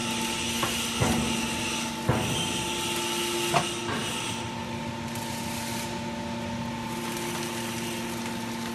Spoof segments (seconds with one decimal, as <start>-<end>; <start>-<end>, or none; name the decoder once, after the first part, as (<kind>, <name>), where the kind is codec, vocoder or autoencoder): none